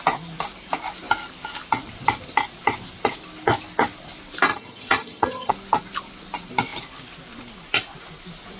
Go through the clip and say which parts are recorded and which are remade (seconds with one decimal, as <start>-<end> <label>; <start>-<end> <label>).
0.0-4.5 recorded; 4.5-5.5 remade; 5.5-8.6 recorded